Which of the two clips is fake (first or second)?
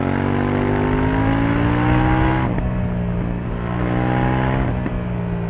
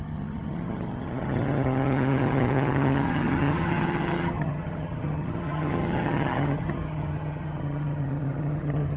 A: second